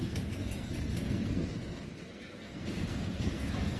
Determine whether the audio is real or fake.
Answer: fake